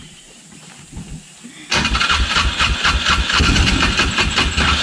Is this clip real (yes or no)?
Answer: yes